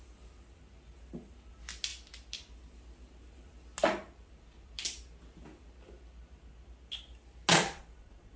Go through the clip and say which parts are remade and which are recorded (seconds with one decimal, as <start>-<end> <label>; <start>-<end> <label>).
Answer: 0.0-7.5 recorded; 7.5-8.4 remade